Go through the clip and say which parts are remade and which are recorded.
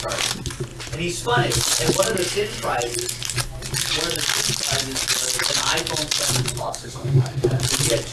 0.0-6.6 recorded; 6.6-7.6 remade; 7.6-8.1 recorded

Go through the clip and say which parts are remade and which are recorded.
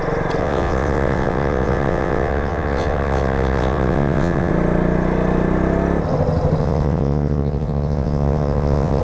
0.0-0.4 recorded; 0.4-4.5 remade; 4.5-6.6 recorded; 6.6-9.0 remade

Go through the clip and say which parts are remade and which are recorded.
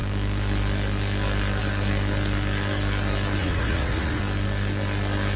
0.0-3.4 recorded; 3.4-4.2 remade; 4.2-5.4 recorded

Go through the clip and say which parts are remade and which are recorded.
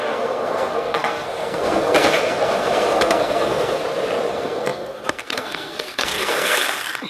0.0-3.8 remade; 3.8-4.3 recorded; 4.3-7.1 remade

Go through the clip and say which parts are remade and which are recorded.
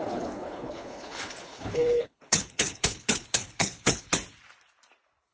0.0-4.1 remade; 4.1-5.3 recorded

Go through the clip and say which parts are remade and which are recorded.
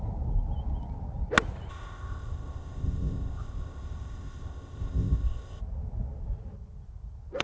0.0-1.7 recorded; 1.7-5.6 remade; 5.6-7.4 recorded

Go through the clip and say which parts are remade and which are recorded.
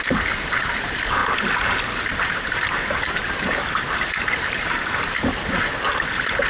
0.0-1.2 remade; 1.2-2.1 recorded; 2.1-6.5 remade